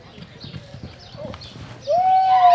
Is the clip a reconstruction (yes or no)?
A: no